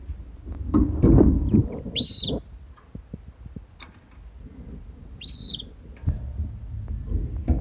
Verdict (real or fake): real